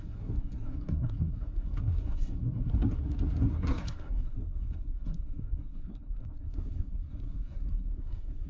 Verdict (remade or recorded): remade